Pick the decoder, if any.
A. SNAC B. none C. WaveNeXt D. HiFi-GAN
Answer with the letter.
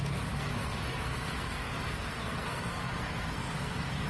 A